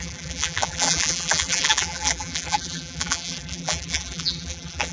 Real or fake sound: fake